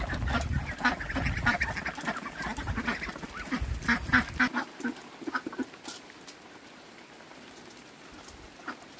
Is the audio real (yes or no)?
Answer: yes